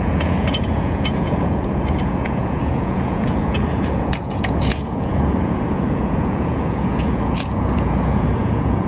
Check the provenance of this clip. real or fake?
fake